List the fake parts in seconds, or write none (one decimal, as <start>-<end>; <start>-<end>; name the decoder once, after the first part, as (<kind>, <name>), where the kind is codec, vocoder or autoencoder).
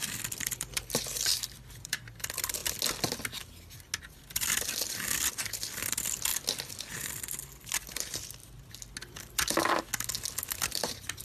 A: 0.0-2.6 (vocoder, BigVGAN v2); 4.0-6.3; 6.9-8.4; 10.6-11.2